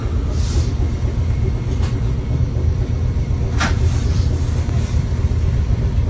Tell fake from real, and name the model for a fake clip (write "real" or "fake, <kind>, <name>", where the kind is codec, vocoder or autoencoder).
real